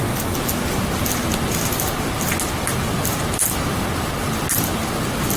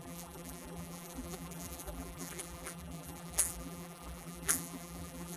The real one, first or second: first